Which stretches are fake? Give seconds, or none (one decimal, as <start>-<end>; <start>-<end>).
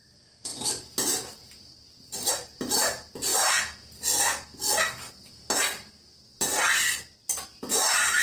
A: 0.0-6.5